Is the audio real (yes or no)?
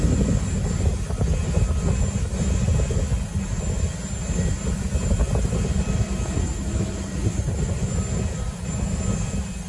yes